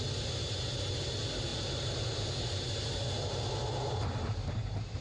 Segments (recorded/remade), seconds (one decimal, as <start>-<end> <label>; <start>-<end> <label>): 0.0-5.0 recorded